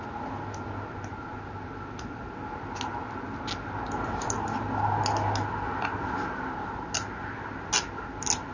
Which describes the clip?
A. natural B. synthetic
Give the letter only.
A